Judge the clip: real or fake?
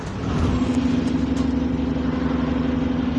real